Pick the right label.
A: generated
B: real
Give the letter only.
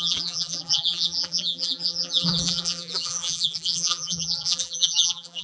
A